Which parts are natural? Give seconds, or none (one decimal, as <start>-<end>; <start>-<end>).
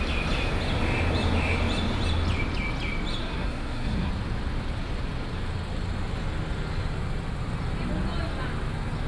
0.0-3.2; 4.1-9.1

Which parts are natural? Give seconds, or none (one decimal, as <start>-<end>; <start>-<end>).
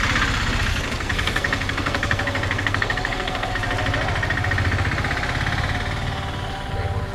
0.0-0.7; 3.5-7.1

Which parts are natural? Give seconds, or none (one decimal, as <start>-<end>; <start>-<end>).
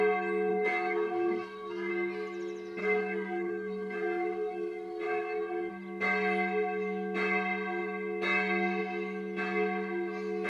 0.0-0.5; 1.9-2.8; 5.7-10.5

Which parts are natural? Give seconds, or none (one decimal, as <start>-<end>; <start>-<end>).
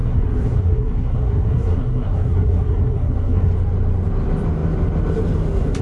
3.5-5.8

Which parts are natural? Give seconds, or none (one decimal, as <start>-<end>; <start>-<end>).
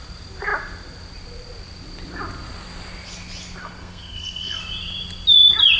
0.0-3.6; 4.6-5.8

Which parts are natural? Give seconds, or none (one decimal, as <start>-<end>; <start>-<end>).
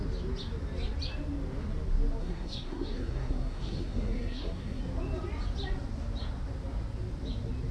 0.0-2.2; 4.8-7.7